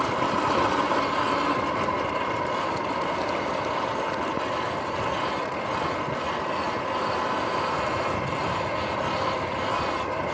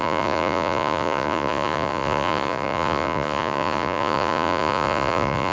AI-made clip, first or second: second